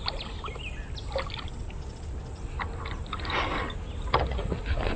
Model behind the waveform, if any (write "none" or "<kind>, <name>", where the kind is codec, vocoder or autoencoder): none